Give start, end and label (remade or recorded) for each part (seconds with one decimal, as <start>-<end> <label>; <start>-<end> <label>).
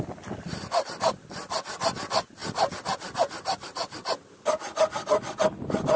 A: 0.0-6.0 recorded